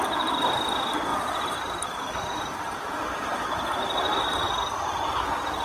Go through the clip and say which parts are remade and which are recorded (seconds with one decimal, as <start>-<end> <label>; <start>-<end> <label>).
0.0-1.1 recorded; 1.1-4.5 remade; 4.5-5.6 recorded